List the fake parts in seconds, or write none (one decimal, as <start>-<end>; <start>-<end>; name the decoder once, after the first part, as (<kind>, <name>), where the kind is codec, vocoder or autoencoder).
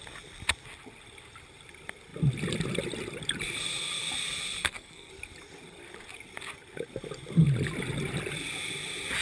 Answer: 4.6-5.1 (codec, SNAC)